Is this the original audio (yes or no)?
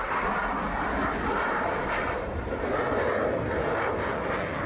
yes